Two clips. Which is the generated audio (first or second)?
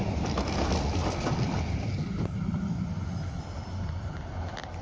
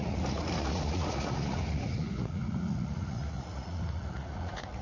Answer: second